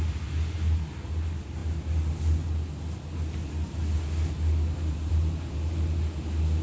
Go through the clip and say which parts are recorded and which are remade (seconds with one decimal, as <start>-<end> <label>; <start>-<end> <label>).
0.0-6.6 recorded